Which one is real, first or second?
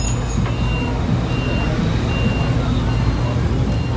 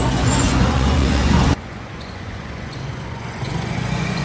first